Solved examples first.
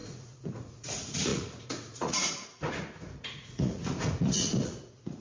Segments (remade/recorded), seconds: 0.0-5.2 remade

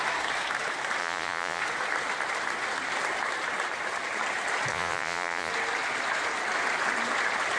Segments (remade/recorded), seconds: 0.0-1.0 recorded; 1.0-1.6 remade; 1.6-4.7 recorded; 4.7-5.5 remade; 5.5-7.6 recorded

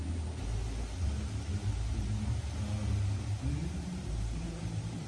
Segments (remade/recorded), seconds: 0.0-0.6 remade; 0.6-3.7 recorded; 3.7-5.1 remade

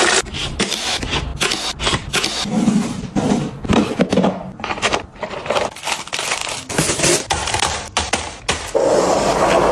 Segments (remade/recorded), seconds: 0.0-1.3 remade; 1.3-1.8 recorded; 1.8-4.4 remade; 4.4-5.1 recorded; 5.1-6.4 remade; 6.4-9.7 recorded

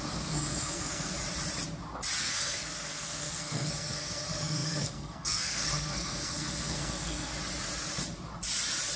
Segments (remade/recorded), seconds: 0.0-1.1 remade; 1.1-2.2 recorded; 2.2-7.3 remade; 7.3-9.0 recorded

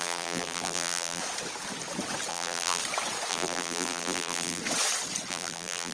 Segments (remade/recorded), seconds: 0.0-1.2 remade; 1.2-2.3 recorded; 2.3-2.8 remade; 2.8-3.3 recorded; 3.3-4.6 remade; 4.6-5.3 recorded; 5.3-5.9 remade